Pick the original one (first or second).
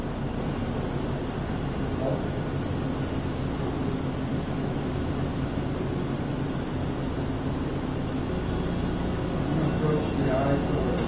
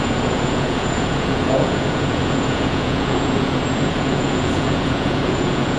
first